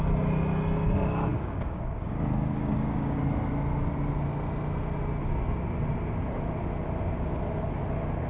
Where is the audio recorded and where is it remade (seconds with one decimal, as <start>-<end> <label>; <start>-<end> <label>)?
0.0-1.3 recorded; 1.3-3.2 remade; 3.2-8.3 recorded